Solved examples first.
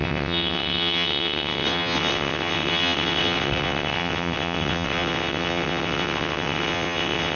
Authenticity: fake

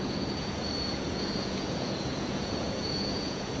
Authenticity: fake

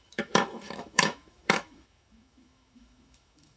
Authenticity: fake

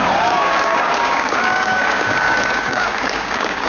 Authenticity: fake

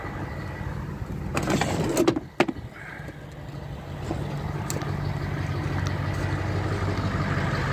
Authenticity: real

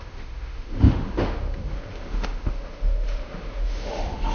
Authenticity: fake